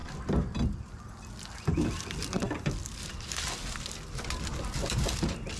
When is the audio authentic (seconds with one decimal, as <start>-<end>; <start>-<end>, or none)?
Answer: 0.0-5.6